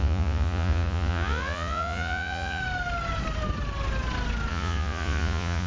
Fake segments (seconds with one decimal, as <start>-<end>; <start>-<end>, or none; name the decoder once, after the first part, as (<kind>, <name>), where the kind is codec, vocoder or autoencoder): 0.0-2.6 (vocoder, Vocos); 4.5-5.7